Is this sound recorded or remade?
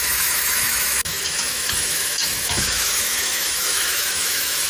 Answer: remade